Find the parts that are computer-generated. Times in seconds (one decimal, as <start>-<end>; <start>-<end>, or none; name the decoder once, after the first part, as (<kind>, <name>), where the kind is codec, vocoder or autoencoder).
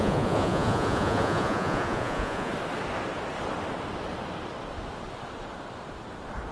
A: 0.0-2.5 (vocoder, Vocos)